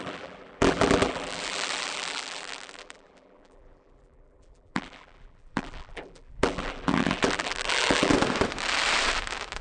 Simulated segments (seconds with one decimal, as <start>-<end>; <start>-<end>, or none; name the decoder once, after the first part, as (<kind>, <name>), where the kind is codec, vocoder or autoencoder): 0.0-8.1 (vocoder, BigVGAN v2)